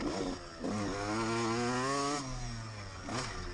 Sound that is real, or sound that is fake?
real